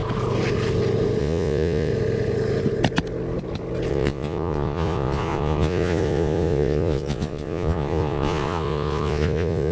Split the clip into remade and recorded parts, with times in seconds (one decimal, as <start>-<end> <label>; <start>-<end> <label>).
0.0-1.2 recorded; 1.2-1.9 remade; 1.9-3.9 recorded; 3.9-9.7 remade